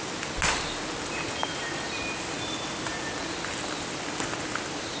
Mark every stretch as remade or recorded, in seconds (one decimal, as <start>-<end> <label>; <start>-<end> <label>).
0.0-5.0 recorded